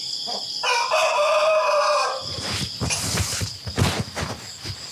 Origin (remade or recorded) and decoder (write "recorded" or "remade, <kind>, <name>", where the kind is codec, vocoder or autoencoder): recorded